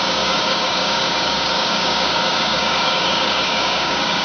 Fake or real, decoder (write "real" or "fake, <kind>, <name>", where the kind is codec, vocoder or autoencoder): fake, codec, DAC